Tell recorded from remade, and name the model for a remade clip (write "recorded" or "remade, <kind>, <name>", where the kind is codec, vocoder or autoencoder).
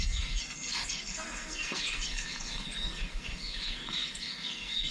remade, codec, SNAC